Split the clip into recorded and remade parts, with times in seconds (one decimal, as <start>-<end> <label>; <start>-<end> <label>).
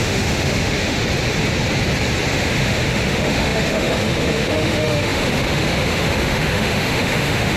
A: 0.0-1.0 remade; 1.0-2.3 recorded; 2.3-7.6 remade